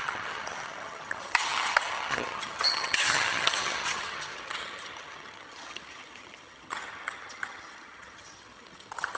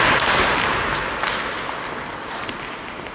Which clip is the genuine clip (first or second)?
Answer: second